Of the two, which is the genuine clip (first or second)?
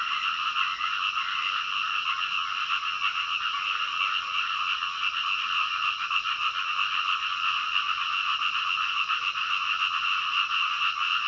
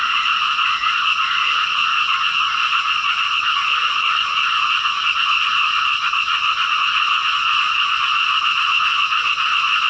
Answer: first